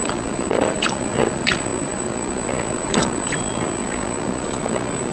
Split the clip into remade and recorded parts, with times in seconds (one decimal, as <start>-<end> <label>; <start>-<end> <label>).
0.0-5.1 remade